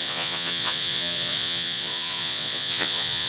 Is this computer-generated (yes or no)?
yes